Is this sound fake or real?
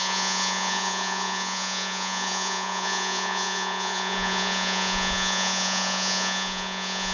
fake